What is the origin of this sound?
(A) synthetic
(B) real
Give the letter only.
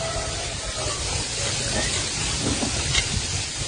B